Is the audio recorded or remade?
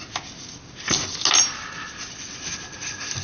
recorded